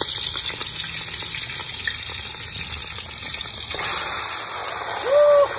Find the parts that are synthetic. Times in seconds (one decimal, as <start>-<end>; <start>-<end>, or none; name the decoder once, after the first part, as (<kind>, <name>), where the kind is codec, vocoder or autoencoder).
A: none